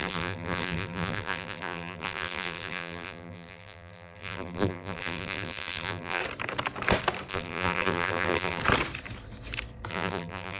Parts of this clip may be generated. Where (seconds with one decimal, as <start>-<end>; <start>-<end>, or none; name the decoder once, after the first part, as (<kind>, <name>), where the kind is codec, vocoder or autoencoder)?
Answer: 0.0-6.2 (vocoder, BigVGAN v2); 7.3-8.6; 9.9-10.6